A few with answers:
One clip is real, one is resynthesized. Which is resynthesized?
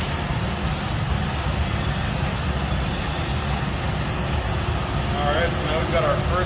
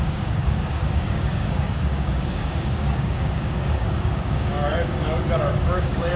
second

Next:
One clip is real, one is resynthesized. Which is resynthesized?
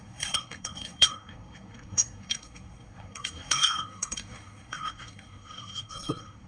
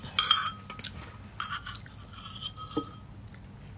first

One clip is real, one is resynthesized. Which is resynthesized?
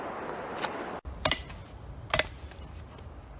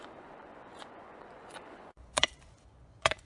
second